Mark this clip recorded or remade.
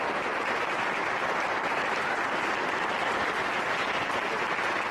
recorded